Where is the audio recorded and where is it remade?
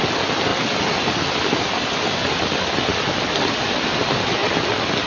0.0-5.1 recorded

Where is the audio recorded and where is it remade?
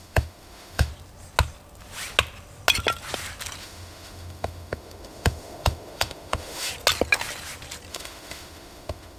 0.0-0.9 remade; 0.9-3.6 recorded; 3.6-6.7 remade; 6.7-7.9 recorded; 7.9-9.2 remade